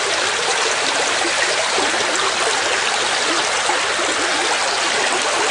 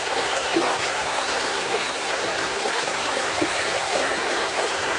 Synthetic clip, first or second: second